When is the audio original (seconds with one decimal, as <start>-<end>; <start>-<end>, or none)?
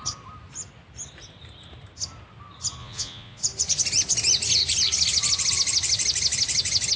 0.0-2.8; 3.4-7.0